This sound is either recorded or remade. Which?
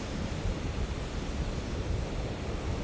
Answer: recorded